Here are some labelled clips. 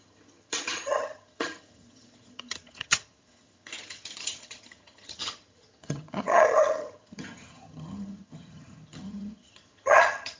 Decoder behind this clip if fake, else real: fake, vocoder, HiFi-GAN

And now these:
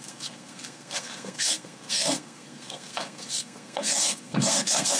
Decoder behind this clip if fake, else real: fake, codec, SNAC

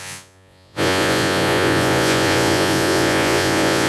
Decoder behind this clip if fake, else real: fake, vocoder, Vocos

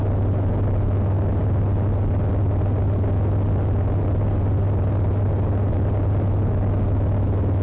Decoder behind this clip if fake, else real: real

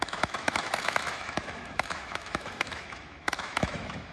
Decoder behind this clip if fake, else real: fake, autoencoder, DAC-VAE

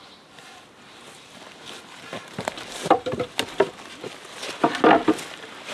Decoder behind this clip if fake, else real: real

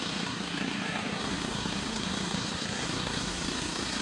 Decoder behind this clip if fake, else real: fake, codec, SNAC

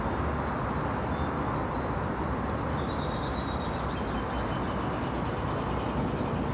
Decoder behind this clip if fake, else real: real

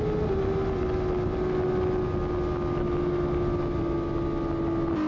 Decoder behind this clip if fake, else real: real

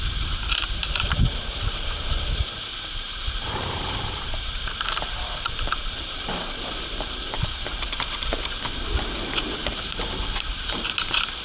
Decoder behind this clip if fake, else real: fake, vocoder, BigVGAN v2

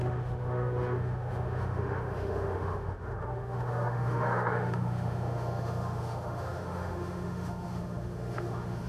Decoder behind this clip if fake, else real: fake, autoencoder, DAC-VAE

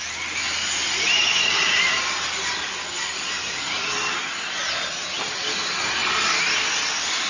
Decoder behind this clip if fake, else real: real